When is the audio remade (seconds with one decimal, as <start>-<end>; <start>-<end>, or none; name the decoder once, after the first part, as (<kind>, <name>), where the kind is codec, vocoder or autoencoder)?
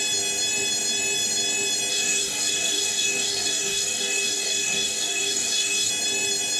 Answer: 1.9-5.9 (codec, DAC)